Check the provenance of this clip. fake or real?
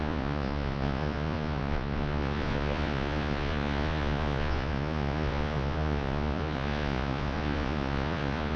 fake